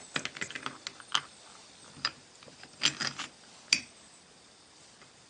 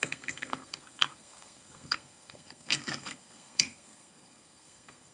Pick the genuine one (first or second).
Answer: first